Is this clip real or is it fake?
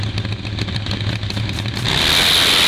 real